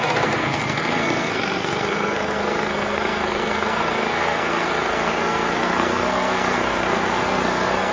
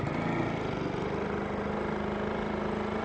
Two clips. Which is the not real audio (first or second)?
first